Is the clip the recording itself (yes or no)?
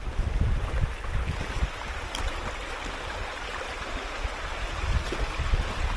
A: yes